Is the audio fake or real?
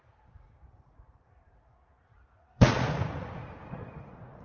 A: fake